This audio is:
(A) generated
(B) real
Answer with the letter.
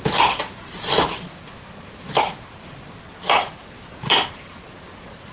B